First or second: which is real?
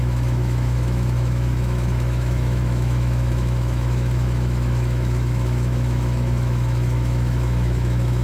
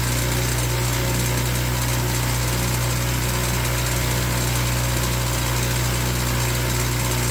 second